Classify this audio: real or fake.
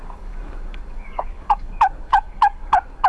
fake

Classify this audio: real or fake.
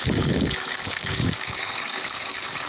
fake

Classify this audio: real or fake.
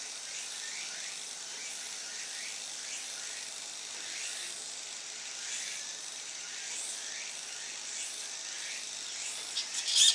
real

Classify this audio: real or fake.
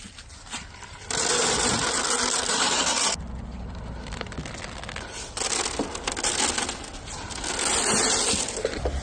real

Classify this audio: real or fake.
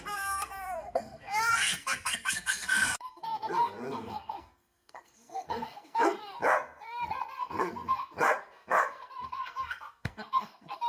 fake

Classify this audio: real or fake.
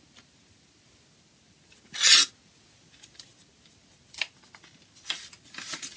real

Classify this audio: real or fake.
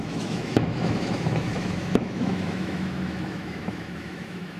fake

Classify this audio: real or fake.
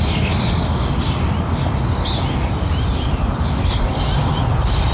real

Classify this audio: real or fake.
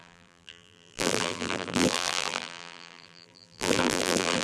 fake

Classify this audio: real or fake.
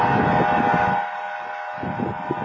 real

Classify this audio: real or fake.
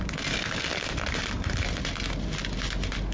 real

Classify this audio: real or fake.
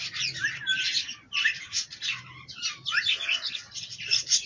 real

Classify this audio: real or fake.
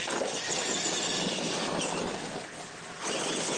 real